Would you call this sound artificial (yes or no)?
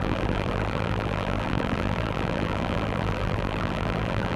yes